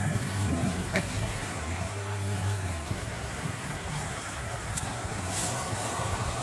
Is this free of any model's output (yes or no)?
no